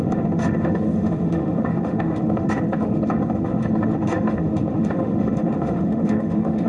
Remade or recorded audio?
remade